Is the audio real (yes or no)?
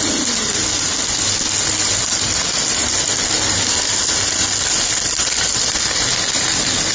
yes